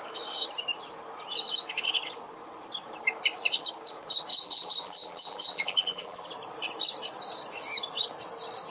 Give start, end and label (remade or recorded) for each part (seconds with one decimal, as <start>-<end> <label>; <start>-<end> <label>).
0.0-4.3 recorded; 4.3-6.3 remade; 6.3-8.7 recorded